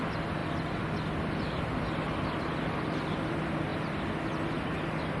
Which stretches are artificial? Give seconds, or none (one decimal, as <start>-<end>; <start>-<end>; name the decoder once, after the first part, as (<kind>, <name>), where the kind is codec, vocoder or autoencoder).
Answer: none